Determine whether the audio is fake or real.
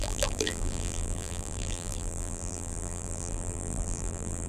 fake